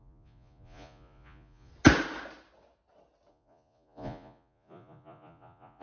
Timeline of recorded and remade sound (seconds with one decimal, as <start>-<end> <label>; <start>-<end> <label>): 0.0-1.7 remade; 1.7-3.3 recorded; 3.3-5.8 remade